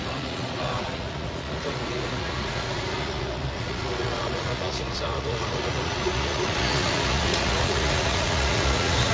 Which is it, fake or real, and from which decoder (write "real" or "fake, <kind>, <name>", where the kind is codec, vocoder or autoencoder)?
fake, vocoder, Vocos